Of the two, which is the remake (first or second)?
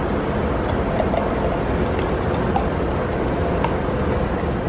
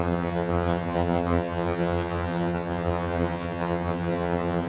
second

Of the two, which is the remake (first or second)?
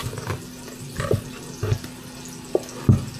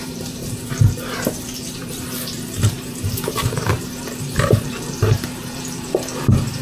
second